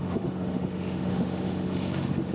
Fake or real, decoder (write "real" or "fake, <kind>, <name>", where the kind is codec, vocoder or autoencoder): fake, autoencoder, DAC-VAE